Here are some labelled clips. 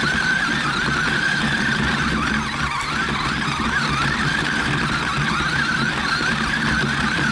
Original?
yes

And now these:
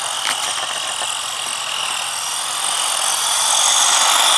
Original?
yes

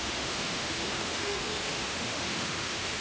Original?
no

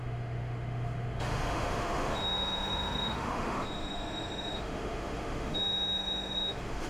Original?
no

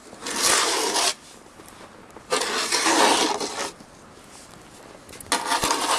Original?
yes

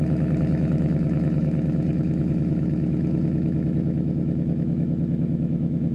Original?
no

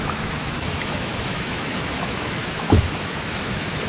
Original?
no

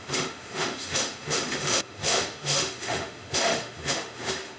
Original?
no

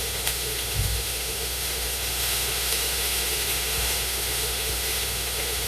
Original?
no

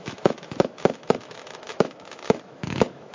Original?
no